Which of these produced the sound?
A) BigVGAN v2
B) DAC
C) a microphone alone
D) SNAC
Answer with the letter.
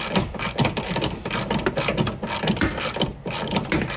C